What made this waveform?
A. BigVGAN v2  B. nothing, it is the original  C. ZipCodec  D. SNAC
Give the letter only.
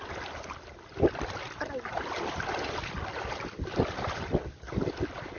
B